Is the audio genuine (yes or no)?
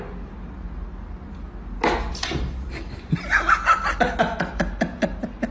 yes